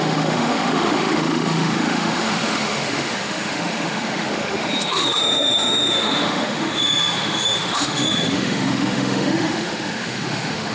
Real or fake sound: fake